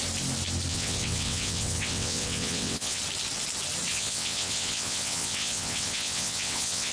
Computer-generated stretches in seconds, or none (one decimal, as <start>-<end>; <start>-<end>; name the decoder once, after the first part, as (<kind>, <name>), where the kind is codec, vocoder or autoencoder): 0.7-3.0 (vocoder, WaveNeXt); 3.9-6.9